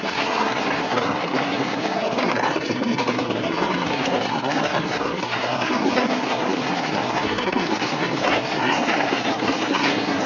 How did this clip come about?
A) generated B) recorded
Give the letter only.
A